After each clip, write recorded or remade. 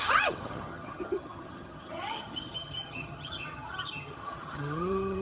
remade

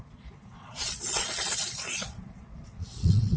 remade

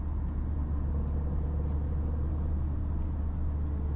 recorded